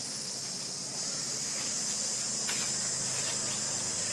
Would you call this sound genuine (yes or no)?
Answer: yes